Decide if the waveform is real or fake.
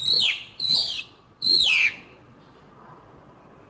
fake